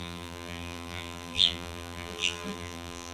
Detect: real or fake fake